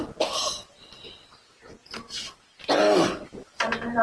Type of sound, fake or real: real